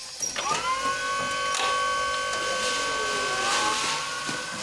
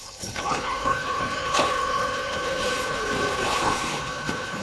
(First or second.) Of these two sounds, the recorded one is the first